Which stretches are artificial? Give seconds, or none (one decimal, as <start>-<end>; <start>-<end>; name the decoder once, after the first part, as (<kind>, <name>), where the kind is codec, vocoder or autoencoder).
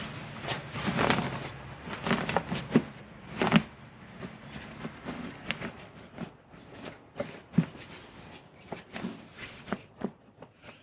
9.4-10.8 (vocoder, Vocos)